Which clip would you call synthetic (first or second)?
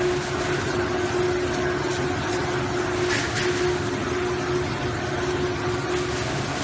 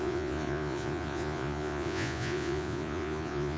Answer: second